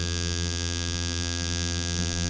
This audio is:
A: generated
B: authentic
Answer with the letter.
A